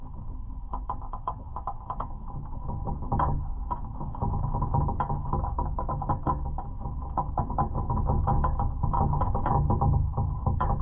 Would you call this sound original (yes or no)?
no